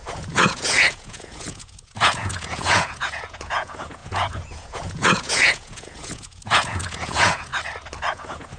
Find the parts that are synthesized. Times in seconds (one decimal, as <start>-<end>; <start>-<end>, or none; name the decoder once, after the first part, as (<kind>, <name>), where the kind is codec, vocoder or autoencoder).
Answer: 0.0-7.5 (vocoder, Vocos); 8.1-8.6